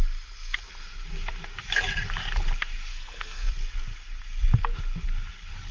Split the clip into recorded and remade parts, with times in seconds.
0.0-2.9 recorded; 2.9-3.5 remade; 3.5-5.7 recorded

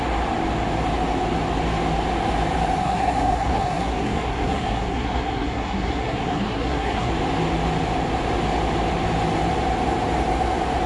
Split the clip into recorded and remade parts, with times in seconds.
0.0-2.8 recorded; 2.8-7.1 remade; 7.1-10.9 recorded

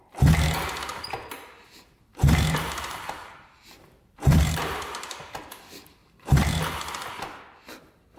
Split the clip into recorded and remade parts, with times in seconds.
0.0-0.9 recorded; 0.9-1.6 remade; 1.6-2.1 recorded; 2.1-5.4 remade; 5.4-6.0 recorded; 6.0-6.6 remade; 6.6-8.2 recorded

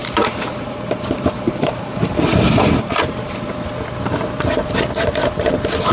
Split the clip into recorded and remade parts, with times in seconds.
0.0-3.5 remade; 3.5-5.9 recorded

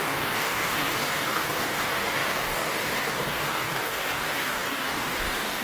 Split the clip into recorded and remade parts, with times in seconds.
0.0-5.6 remade

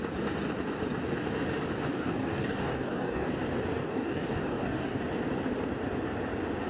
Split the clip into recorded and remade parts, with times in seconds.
0.0-1.9 recorded; 1.9-3.3 remade; 3.3-3.8 recorded; 3.8-5.0 remade; 5.0-6.7 recorded

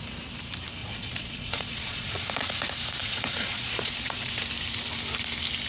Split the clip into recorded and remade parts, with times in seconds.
0.0-0.8 recorded; 0.8-2.2 remade; 2.2-3.0 recorded; 3.0-4.3 remade; 4.3-5.7 recorded